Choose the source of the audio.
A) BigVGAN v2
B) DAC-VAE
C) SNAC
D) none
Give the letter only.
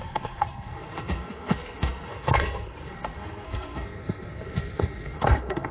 C